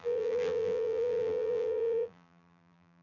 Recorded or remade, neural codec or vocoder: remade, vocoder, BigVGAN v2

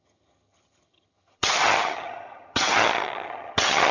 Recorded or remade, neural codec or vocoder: remade, vocoder, HiFi-GAN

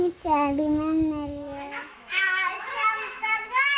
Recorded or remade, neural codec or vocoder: remade, autoencoder, DAC-VAE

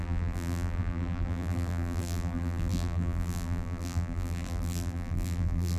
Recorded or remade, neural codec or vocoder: remade, vocoder, BigVGAN v2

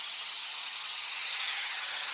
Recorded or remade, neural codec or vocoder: remade, vocoder, HiFi-GAN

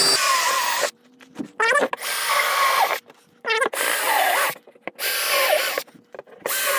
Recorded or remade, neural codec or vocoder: recorded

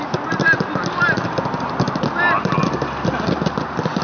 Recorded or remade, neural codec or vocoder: recorded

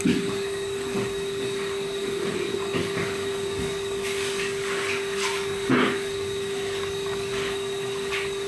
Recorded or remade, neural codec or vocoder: remade, codec, DAC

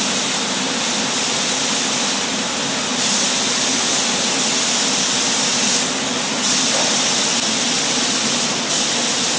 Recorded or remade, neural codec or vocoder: recorded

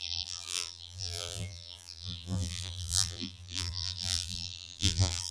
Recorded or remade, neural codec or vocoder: remade, vocoder, BigVGAN v2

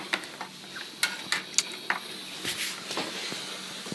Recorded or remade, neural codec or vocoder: recorded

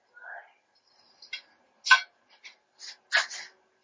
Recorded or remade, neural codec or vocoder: recorded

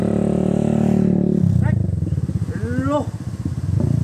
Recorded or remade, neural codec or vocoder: recorded